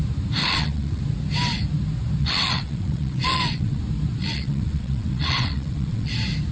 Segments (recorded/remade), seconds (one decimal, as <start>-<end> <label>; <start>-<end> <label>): 0.0-0.4 recorded; 0.4-1.0 remade; 1.0-2.2 recorded; 2.2-3.8 remade; 3.8-4.2 recorded; 4.2-6.1 remade; 6.1-6.5 recorded